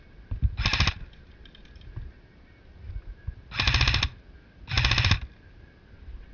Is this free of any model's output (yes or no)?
yes